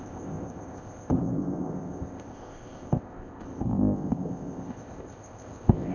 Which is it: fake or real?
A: fake